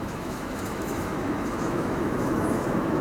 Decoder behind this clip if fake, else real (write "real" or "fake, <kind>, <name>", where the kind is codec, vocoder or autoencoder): fake, autoencoder, DAC-VAE